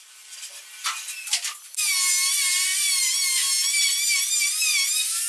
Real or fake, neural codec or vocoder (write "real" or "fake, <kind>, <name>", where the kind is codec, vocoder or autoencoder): real